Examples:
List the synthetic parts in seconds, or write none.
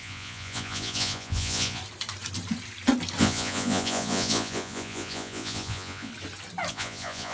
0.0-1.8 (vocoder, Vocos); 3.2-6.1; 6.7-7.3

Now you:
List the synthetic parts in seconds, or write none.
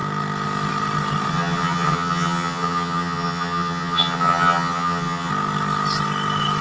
1.3-5.3 (vocoder, HiFi-GAN)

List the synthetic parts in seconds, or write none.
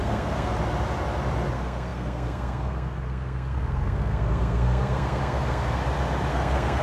0.0-0.5 (codec, SNAC); 1.5-5.8; 6.3-6.8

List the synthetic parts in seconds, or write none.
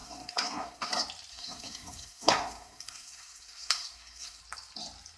0.0-0.9 (codec, SNAC); 1.3-4.4